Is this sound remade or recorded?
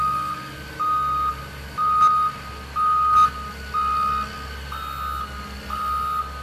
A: recorded